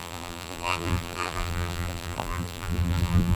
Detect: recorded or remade remade